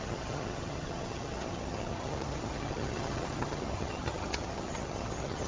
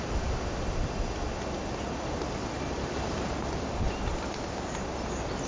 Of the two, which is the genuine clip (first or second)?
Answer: second